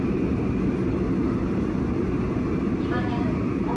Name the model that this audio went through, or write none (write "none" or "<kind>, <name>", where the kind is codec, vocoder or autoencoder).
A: none